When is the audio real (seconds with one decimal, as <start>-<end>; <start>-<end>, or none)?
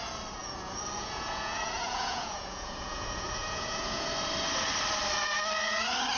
0.0-0.4; 4.1-6.2